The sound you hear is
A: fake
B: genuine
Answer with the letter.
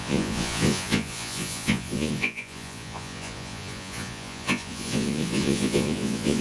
A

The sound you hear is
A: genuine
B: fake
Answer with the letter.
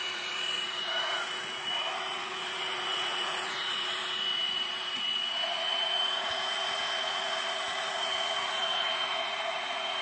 B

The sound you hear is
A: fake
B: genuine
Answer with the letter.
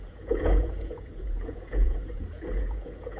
A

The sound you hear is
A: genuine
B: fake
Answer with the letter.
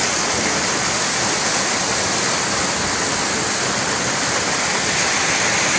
A